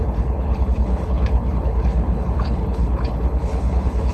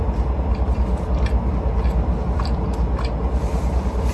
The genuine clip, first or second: second